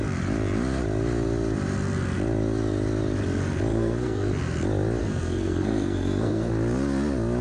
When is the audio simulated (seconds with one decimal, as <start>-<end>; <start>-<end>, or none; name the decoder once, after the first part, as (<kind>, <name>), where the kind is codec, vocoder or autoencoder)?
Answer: 3.7-4.3 (codec, SNAC); 5.0-6.5